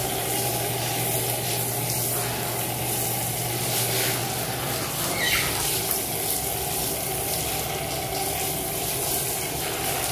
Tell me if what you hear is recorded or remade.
recorded